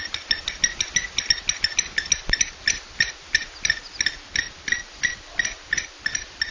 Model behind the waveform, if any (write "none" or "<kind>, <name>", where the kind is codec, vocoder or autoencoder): none